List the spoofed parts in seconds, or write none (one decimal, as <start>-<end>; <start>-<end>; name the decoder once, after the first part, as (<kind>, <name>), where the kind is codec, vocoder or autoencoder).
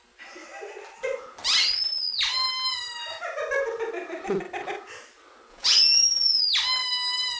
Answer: 5.5-6.4 (vocoder, Vocos)